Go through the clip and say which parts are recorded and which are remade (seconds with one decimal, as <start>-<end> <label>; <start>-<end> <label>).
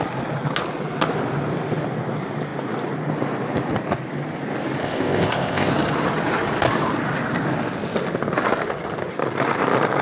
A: 0.0-4.8 recorded; 4.8-5.7 remade; 5.7-10.0 recorded